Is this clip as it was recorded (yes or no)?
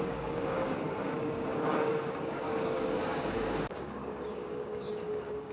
no